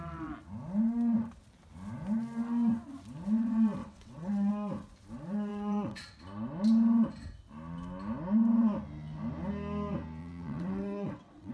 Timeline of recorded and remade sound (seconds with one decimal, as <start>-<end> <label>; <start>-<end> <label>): 0.0-3.8 recorded; 3.8-4.5 remade; 4.5-5.5 recorded; 5.5-6.1 remade; 6.1-10.2 recorded; 10.2-11.5 remade